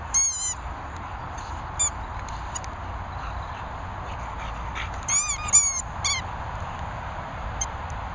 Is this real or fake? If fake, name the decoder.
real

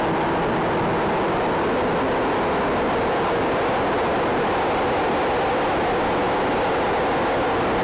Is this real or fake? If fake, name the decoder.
real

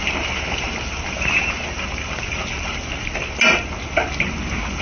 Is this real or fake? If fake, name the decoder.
real